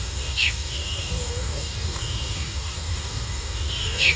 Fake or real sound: fake